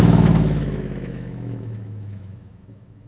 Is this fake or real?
fake